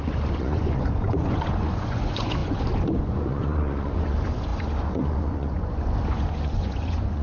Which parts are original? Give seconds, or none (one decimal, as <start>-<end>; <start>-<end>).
none